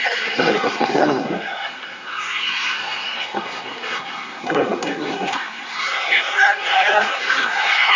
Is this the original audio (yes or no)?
no